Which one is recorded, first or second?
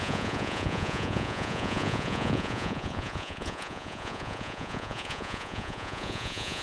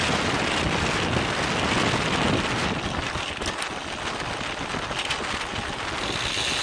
second